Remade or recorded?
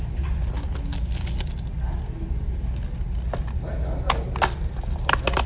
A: recorded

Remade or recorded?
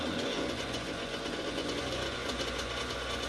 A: remade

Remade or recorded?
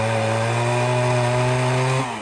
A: recorded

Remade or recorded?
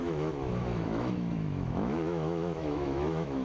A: remade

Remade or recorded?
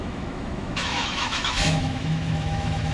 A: remade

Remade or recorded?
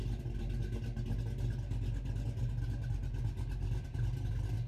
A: recorded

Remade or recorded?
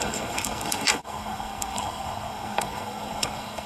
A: remade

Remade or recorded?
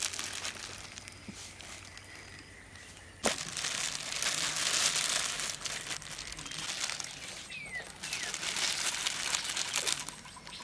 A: recorded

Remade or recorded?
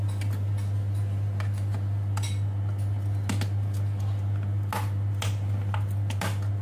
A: recorded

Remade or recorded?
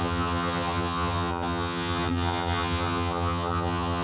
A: remade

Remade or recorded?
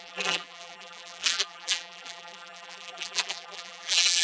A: remade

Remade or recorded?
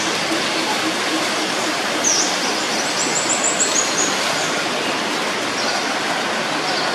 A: recorded